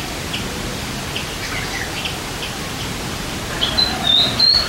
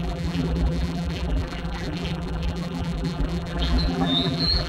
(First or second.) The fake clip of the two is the second